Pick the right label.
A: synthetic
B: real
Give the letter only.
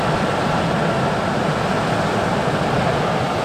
B